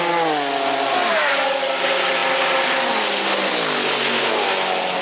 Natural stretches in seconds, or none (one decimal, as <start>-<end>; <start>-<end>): 0.0-1.2; 1.8-5.0